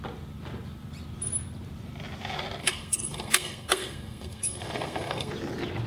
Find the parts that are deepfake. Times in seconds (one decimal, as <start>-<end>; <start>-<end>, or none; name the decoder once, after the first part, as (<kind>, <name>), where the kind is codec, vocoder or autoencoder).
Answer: 2.6-5.3 (codec, SNAC)